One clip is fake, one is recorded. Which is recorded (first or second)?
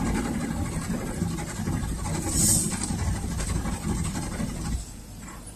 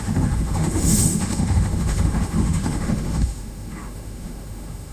first